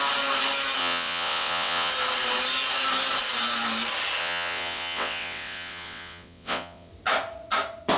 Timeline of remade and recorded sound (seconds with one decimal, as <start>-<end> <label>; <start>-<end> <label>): 0.0-0.8 recorded; 0.8-1.9 remade; 1.9-4.2 recorded; 4.2-6.9 remade; 6.9-8.0 recorded